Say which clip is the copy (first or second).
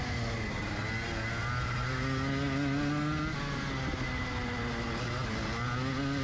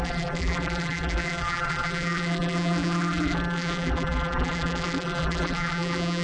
second